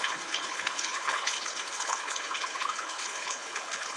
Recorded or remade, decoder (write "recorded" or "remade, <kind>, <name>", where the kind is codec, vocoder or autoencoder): remade, codec, HILCodec